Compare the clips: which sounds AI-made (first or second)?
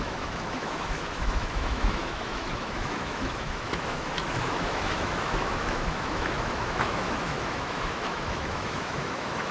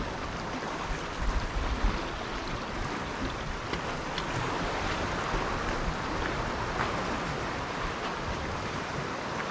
first